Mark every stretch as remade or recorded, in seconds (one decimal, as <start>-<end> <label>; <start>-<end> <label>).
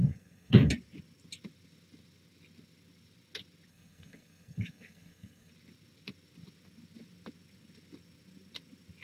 0.0-0.7 remade; 0.7-3.7 recorded; 3.7-5.5 remade; 5.5-9.0 recorded